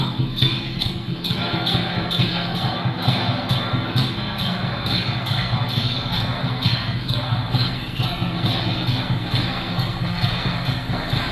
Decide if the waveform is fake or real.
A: fake